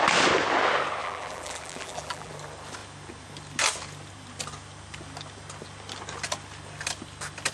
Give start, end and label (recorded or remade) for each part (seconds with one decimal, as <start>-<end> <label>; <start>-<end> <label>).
0.0-1.0 recorded; 1.0-2.3 remade; 2.3-7.5 recorded